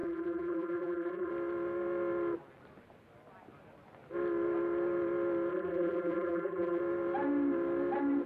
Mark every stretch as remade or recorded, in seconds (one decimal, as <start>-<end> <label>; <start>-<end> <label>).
0.0-1.3 remade; 1.3-5.5 recorded; 5.5-6.8 remade; 6.8-8.3 recorded